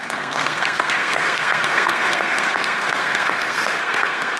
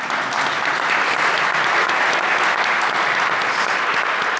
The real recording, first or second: second